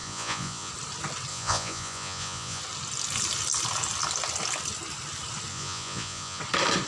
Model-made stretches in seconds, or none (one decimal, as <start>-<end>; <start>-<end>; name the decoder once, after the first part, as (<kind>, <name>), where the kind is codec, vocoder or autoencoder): 0.0-0.7 (vocoder, Vocos); 1.3-2.6; 5.5-6.4